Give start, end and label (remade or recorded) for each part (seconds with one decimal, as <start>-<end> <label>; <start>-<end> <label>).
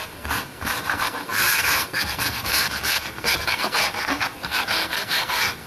0.0-5.7 remade